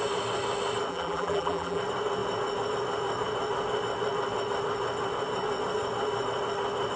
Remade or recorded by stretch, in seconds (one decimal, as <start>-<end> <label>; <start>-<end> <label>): 0.0-0.9 recorded; 0.9-1.8 remade; 1.8-7.0 recorded